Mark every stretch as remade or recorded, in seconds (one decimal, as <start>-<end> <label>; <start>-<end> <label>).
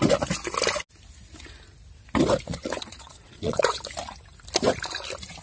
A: 0.0-2.5 recorded; 2.5-3.8 remade; 3.8-5.4 recorded